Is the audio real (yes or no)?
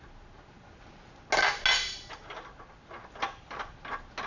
yes